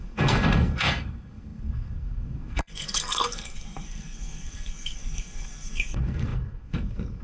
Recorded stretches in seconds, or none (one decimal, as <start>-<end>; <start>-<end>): none